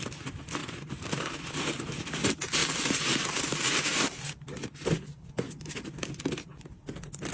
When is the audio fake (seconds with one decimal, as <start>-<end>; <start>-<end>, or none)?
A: 0.6-1.5; 2.6-4.2; 5.1-6.1